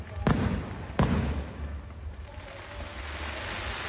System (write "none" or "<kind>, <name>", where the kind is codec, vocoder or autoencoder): none